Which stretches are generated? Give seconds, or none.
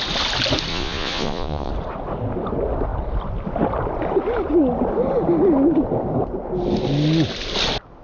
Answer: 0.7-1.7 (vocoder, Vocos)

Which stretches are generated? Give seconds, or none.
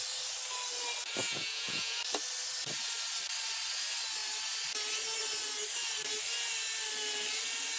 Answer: 1.2-2.0 (vocoder, Vocos)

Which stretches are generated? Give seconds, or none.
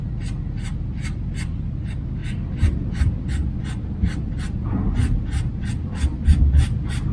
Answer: none